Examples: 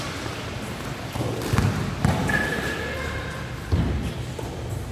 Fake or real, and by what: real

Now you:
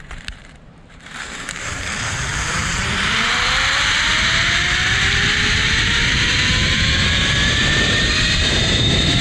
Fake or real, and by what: fake, vocoder, BigVGAN v2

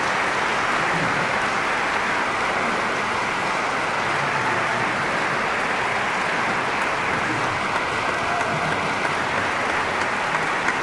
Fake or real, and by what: real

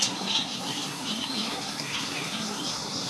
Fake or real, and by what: fake, codec, SNAC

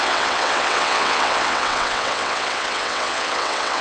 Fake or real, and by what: fake, vocoder, WaveNeXt